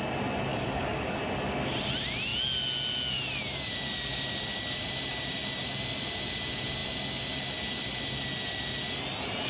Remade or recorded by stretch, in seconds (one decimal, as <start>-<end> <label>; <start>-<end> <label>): 0.0-0.5 recorded; 0.5-1.2 remade; 1.2-9.5 recorded